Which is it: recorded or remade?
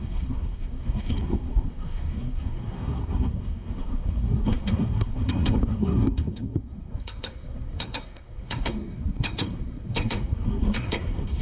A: remade